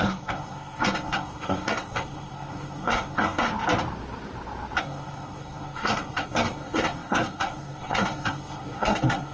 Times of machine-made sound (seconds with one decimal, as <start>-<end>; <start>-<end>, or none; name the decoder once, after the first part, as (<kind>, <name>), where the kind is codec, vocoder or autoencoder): 0.0-3.5 (codec, SNAC); 4.8-9.3